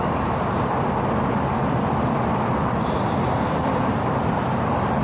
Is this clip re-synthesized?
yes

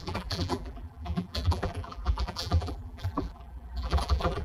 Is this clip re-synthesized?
yes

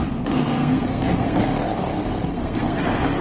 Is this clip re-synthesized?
yes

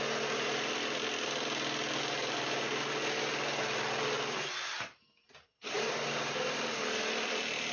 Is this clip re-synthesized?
no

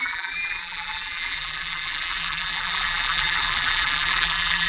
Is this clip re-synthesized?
yes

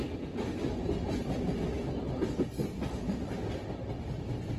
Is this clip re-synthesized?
no